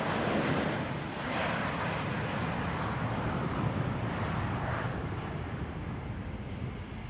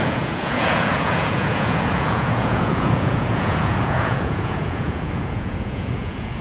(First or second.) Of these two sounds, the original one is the first